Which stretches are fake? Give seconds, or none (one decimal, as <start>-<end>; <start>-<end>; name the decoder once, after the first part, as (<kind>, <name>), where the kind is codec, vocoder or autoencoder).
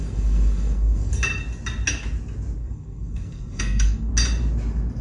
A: 0.0-1.1 (codec, SNAC); 2.6-4.1